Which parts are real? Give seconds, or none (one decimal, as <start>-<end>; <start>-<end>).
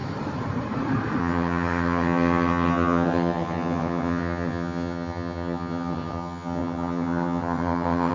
0.0-1.2